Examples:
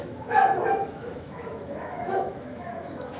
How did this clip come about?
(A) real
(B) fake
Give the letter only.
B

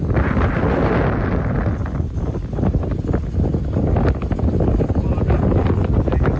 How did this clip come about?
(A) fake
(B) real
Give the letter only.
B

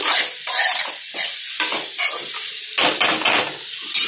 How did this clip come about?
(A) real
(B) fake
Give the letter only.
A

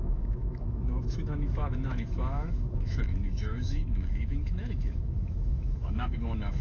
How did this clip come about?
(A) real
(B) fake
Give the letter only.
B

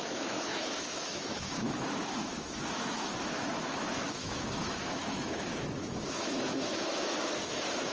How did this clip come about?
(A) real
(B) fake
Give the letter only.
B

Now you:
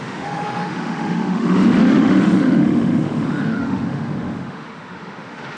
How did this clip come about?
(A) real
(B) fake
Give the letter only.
B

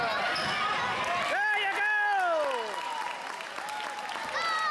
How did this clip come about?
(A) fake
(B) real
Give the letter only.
B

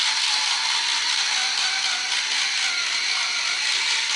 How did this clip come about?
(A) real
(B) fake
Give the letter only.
A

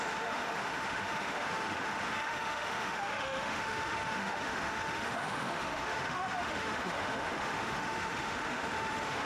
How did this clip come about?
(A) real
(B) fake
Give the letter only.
B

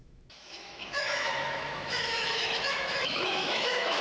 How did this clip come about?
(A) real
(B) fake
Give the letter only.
B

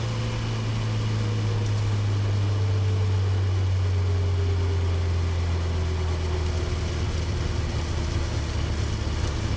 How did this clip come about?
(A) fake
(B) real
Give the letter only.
B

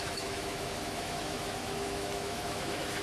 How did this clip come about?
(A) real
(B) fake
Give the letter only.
B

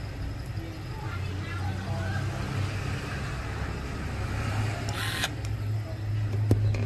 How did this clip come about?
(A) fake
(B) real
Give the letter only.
B